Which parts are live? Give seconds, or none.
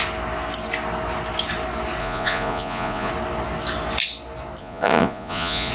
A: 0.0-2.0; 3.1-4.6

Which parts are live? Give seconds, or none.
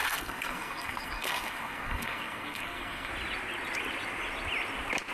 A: 3.1-5.1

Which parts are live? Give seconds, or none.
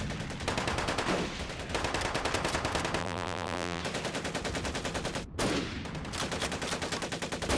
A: 0.0-3.0; 3.8-7.6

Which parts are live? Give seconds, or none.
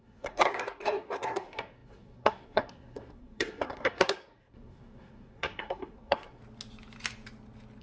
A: 6.4-7.8